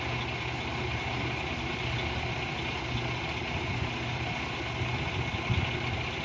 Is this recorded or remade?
recorded